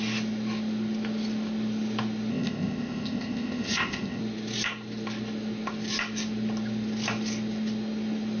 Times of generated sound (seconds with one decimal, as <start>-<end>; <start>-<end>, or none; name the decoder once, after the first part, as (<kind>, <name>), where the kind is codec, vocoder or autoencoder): 2.3-4.2 (codec, ZipCodec)